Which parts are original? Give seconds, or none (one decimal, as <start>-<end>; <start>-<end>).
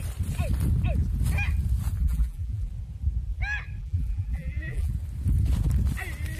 0.0-2.0; 2.7-3.8; 4.9-6.4